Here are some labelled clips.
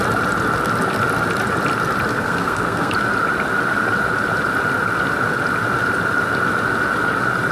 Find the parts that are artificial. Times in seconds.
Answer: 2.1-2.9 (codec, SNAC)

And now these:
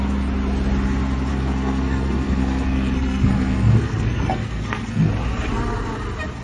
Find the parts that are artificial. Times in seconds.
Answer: 1.3-5.1 (codec, SNAC)

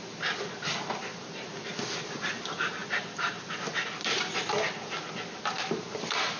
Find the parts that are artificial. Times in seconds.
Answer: none